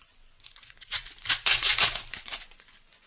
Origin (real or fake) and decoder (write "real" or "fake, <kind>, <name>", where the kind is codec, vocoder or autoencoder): fake, vocoder, Vocos